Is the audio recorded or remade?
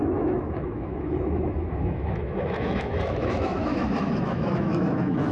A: remade